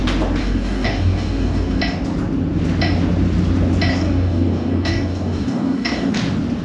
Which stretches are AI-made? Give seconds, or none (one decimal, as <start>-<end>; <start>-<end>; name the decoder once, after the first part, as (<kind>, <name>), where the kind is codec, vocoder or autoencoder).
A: 0.4-1.8 (codec, DAC); 3.9-6.1